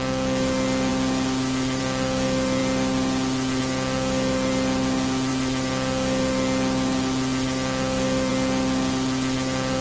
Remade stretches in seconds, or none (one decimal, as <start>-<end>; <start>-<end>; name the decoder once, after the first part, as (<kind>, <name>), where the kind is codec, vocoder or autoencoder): none

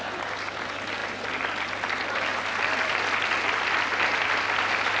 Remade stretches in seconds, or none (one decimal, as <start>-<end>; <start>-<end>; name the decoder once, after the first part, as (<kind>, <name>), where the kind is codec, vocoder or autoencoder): none

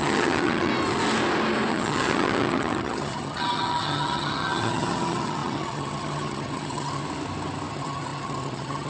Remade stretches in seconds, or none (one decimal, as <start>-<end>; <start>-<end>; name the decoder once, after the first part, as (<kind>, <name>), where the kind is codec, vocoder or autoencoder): 0.0-0.7 (vocoder, HiFi-GAN); 1.7-7.0; 7.7-8.9

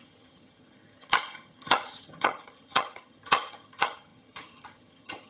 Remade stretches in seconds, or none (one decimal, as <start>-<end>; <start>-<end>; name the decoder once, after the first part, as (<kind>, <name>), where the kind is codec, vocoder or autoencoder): 0.0-5.3 (vocoder, HiFi-GAN)

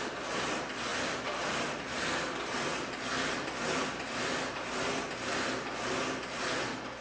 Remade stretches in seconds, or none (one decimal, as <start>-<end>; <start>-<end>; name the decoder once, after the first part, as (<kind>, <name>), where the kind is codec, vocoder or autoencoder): none

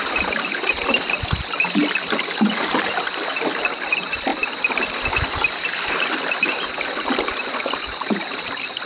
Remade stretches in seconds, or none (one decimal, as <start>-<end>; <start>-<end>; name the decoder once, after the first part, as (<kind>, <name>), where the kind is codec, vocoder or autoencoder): none

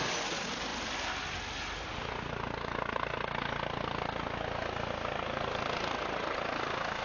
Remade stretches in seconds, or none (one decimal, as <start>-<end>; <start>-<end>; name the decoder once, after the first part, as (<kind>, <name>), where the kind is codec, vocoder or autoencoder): none

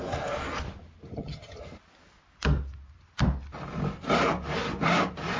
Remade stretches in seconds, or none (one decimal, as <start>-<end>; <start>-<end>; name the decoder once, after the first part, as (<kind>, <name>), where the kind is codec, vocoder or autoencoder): 1.1-1.6 (vocoder, HiFi-GAN)